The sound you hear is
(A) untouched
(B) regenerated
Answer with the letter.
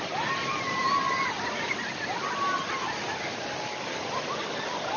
A